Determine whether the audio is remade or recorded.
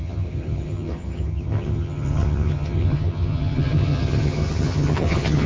remade